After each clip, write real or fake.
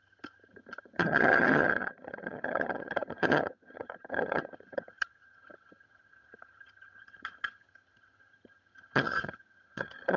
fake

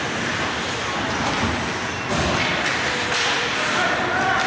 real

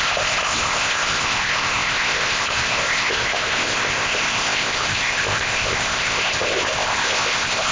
fake